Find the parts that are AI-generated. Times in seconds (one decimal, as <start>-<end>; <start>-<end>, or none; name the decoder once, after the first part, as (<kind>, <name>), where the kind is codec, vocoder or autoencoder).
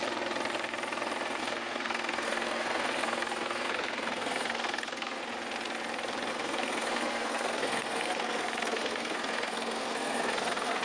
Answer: 1.4-5.2 (codec, SNAC); 6.3-10.8